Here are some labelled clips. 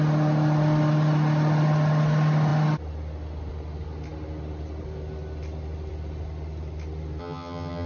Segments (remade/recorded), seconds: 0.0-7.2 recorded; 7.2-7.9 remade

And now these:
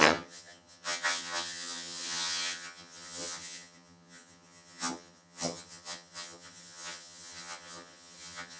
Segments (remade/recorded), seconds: 0.0-8.6 remade

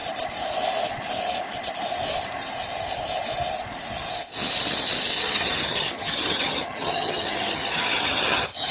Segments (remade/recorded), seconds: 0.0-5.2 recorded; 5.2-8.7 remade

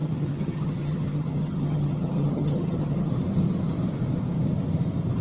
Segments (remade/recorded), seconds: 0.0-3.1 remade; 3.1-5.2 recorded